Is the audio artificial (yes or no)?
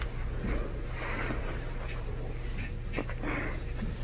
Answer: no